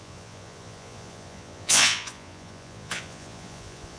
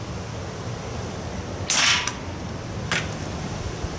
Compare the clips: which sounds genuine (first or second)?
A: second